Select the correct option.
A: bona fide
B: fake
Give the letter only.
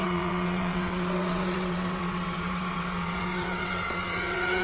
B